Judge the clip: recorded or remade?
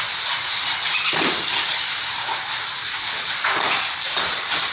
recorded